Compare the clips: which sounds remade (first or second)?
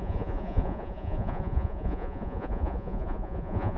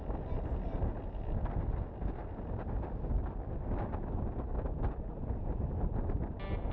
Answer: first